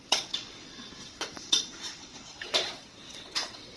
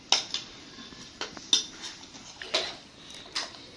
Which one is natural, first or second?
second